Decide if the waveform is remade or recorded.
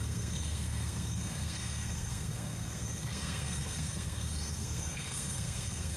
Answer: remade